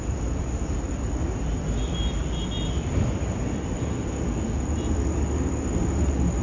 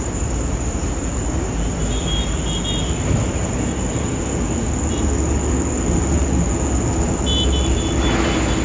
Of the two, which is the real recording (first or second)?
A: second